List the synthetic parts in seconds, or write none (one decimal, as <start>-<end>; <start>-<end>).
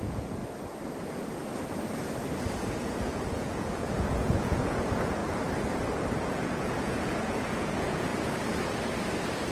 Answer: 0.0-0.4; 2.8-5.2; 6.2-8.1